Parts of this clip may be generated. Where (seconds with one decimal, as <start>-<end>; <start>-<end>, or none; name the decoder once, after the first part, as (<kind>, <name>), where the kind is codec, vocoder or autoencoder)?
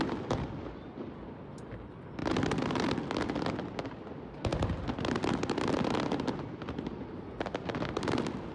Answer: none